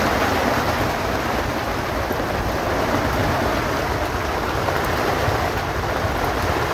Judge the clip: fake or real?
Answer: real